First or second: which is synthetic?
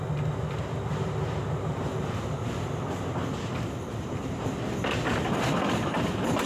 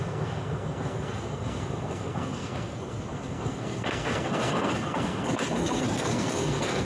second